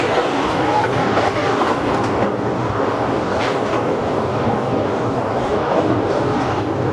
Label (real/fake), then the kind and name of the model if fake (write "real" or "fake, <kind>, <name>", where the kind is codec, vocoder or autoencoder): fake, codec, DAC